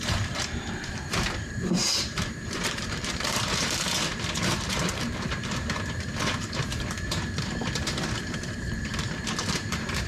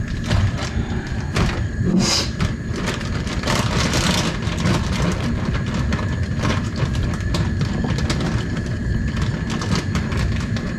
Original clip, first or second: second